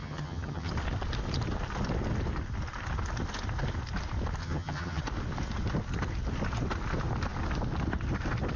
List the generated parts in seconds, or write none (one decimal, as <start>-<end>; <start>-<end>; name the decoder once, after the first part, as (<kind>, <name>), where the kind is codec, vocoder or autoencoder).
0.0-0.7 (vocoder, HiFi-GAN); 4.4-5.0

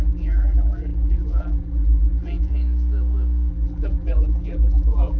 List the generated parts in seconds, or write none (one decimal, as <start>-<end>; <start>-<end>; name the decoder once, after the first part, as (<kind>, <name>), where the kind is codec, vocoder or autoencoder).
0.0-2.5 (vocoder, BigVGAN v2); 3.5-5.2

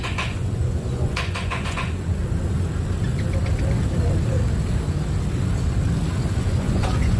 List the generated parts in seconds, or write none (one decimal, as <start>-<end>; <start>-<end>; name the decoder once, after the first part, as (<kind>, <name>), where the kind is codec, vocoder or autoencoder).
0.0-2.2 (vocoder, Vocos); 6.4-7.2

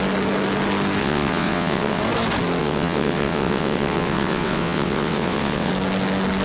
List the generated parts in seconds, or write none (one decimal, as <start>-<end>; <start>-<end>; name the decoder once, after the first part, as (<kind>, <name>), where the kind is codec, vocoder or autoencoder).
1.0-2.0 (vocoder, WaveNeXt); 2.6-5.7

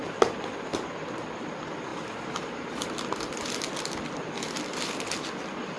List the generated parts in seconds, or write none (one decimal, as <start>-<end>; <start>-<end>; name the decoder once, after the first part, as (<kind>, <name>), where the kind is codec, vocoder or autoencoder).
none